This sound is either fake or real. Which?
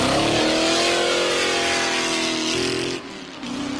real